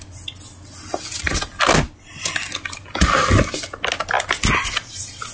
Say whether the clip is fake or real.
real